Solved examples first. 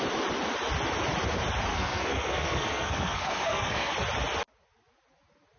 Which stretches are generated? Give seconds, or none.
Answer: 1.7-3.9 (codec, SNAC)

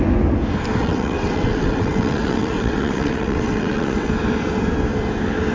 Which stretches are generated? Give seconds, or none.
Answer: 0.8-4.1 (vocoder, WaveNeXt)

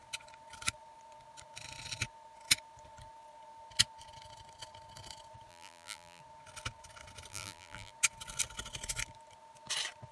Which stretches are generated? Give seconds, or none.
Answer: 5.5-6.2 (vocoder, BigVGAN v2); 7.3-7.9

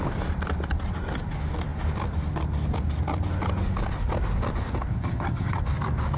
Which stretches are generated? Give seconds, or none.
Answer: 4.9-5.6 (vocoder, HiFi-GAN)

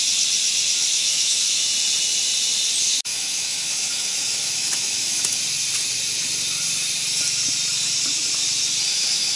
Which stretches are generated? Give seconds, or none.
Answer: 0.9-1.6 (autoencoder, DAC-VAE); 3.1-5.4; 8.9-9.4

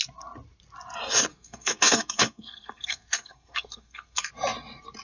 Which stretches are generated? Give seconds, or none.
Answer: 1.3-4.3 (codec, SNAC)

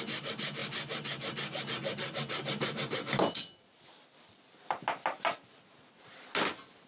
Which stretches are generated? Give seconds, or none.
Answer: none